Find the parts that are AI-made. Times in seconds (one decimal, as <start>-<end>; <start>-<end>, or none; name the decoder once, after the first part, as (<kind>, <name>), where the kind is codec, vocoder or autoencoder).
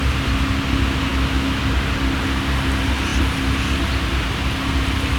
1.1-1.6 (autoencoder, DAC-VAE)